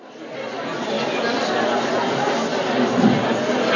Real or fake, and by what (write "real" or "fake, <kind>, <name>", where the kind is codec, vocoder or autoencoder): real